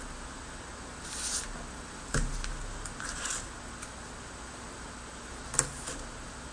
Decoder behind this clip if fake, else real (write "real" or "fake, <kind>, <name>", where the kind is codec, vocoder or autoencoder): real